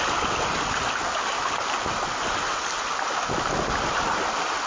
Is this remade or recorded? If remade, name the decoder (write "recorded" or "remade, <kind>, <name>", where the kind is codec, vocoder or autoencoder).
recorded